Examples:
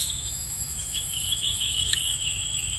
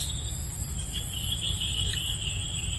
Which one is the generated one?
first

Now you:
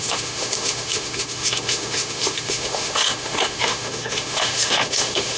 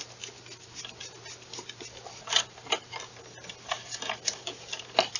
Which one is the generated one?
first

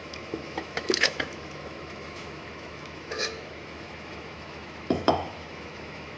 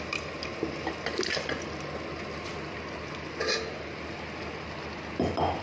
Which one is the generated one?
first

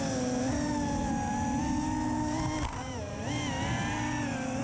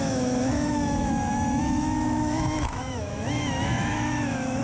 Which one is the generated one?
second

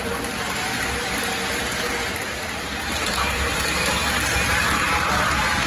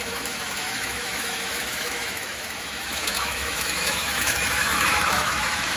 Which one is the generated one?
second